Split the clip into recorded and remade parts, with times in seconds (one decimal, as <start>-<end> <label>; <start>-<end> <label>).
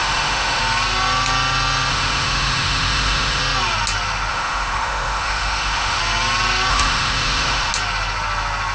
0.0-0.6 remade; 0.6-1.9 recorded; 1.9-3.4 remade; 3.4-4.3 recorded; 4.3-6.0 remade; 6.0-6.7 recorded; 6.7-7.7 remade; 7.7-8.7 recorded